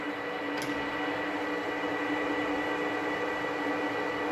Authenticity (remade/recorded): recorded